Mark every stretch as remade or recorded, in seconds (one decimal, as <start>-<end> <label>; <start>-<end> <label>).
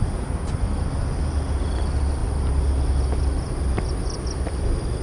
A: 0.0-5.0 recorded